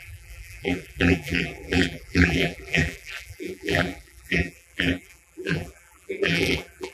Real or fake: fake